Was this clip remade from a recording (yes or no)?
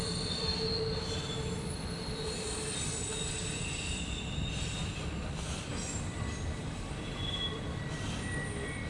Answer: yes